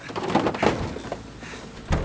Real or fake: real